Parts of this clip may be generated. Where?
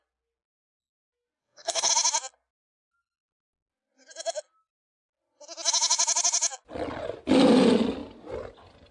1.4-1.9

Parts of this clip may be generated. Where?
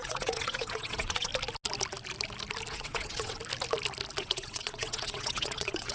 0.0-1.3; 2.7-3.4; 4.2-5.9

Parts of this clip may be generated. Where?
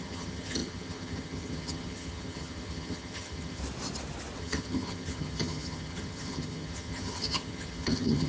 0.0-3.6; 4.4-8.3